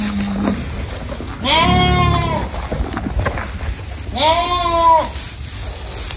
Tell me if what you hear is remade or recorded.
recorded